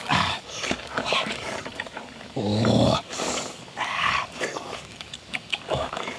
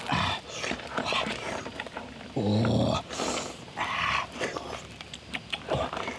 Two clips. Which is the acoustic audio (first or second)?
second